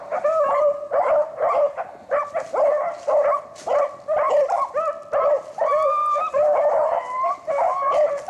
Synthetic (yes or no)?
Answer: no